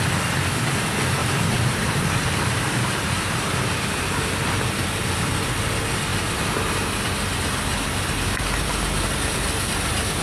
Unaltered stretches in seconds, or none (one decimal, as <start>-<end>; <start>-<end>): 0.0-1.2; 3.3-10.2